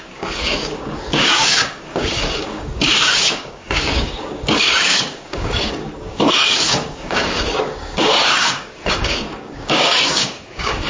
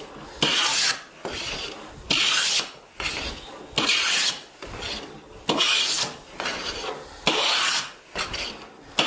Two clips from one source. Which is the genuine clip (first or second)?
second